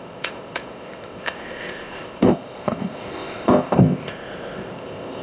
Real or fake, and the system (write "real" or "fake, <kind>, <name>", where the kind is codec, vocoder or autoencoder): fake, codec, ZipCodec